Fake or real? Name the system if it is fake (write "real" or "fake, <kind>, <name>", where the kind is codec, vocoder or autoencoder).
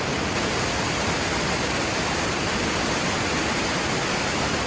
real